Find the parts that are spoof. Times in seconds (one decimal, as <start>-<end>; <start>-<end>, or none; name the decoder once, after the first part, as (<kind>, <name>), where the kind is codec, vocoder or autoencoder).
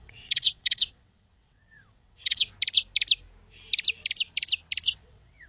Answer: 0.0-2.5 (vocoder, WaveNeXt); 4.9-5.5